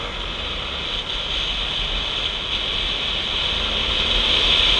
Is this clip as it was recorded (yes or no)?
yes